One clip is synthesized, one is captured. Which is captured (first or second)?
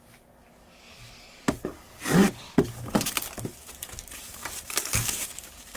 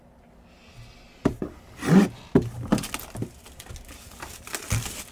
second